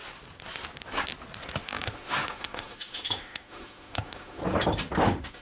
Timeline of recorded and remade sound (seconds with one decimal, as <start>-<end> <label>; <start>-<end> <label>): 0.0-1.6 recorded; 1.6-4.4 remade; 4.4-5.0 recorded; 5.0-5.4 remade